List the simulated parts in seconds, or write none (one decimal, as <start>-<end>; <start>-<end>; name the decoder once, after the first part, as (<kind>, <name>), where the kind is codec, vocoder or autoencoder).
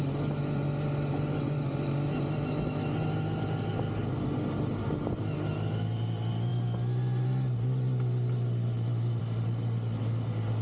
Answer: none